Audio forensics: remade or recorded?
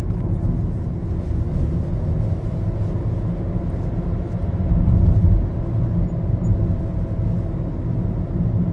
recorded